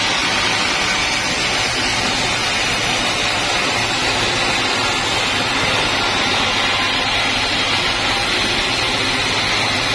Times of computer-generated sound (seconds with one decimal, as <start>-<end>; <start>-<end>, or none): none